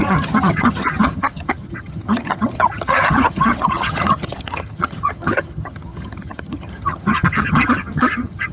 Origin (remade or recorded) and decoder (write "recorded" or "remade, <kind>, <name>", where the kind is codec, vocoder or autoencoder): remade, vocoder, HiFi-GAN